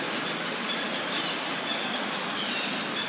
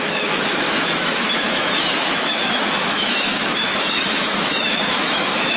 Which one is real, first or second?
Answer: first